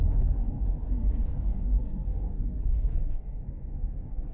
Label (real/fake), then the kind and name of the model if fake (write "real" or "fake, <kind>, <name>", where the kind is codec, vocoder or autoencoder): fake, codec, SNAC